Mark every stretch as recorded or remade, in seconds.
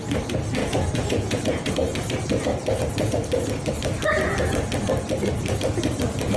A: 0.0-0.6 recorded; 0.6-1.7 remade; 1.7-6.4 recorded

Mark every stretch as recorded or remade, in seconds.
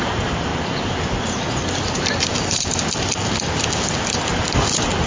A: 0.0-0.5 remade; 0.5-1.7 recorded; 1.7-3.2 remade; 3.2-4.6 recorded; 4.6-5.1 remade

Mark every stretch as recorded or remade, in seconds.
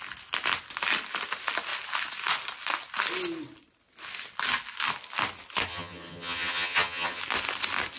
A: 0.0-5.7 recorded; 5.7-7.2 remade; 7.2-8.0 recorded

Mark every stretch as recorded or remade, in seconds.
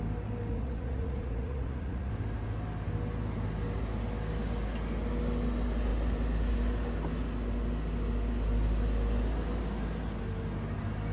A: 0.0-0.5 recorded; 0.5-2.1 remade; 2.1-11.1 recorded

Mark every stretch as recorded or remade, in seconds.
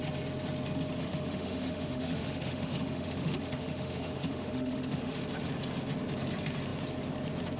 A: 0.0-1.0 recorded; 1.0-5.2 remade; 5.2-7.6 recorded